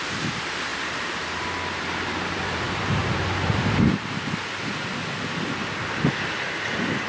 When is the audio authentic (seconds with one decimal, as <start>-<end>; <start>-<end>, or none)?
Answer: 0.0-0.7; 4.4-7.1